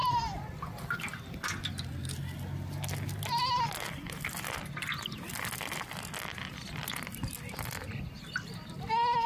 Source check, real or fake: real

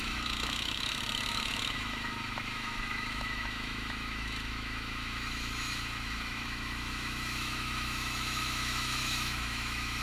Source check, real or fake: fake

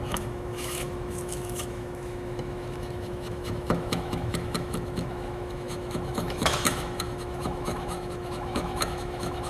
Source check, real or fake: fake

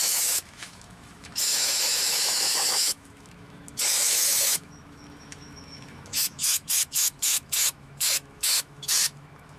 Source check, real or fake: fake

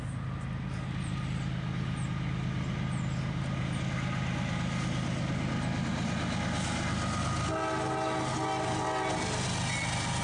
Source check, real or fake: real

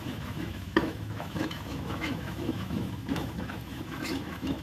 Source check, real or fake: fake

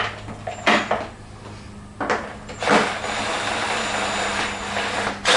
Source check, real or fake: real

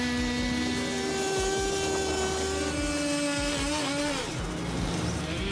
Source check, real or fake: real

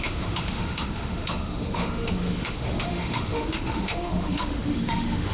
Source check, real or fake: fake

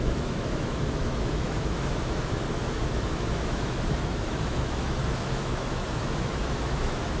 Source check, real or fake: fake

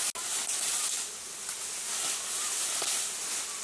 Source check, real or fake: real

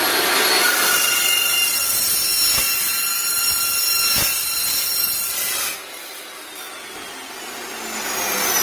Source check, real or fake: real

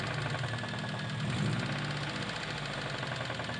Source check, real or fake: real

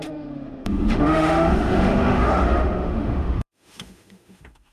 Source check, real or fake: fake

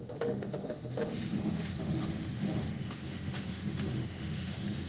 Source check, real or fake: fake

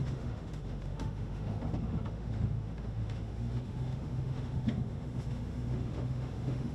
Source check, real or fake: fake